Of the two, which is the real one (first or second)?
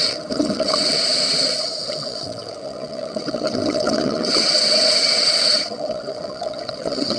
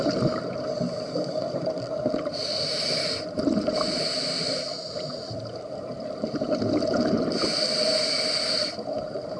second